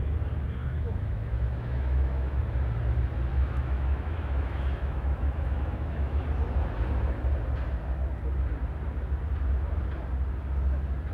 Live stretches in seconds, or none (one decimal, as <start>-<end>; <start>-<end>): 0.0-0.6; 2.4-3.3; 6.2-11.1